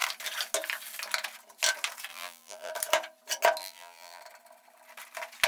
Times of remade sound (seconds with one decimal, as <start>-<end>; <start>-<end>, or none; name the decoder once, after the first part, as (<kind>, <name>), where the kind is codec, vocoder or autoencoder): 2.1-2.7 (vocoder, BigVGAN v2); 3.6-4.2